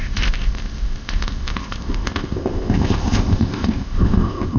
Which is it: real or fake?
fake